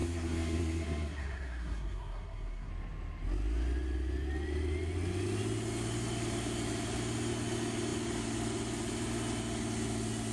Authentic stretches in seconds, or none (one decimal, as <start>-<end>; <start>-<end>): 2.7-10.3